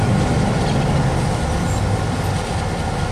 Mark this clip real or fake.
real